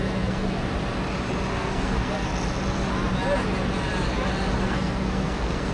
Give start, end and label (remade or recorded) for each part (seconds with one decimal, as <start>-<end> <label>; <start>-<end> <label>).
0.0-0.6 remade; 0.6-1.5 recorded; 1.5-2.3 remade; 2.3-4.6 recorded; 4.6-5.7 remade